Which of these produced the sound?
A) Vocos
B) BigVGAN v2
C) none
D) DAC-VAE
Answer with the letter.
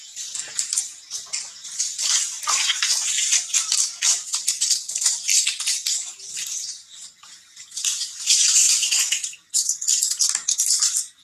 C